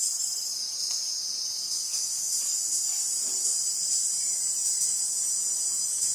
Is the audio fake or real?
real